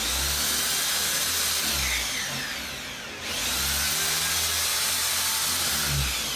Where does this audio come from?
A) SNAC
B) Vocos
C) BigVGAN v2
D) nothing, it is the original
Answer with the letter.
D